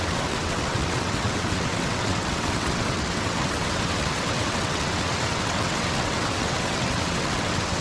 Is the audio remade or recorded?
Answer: remade